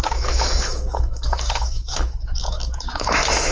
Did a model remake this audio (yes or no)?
yes